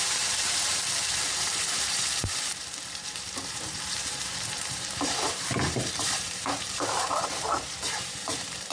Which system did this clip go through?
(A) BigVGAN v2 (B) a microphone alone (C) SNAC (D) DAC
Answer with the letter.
A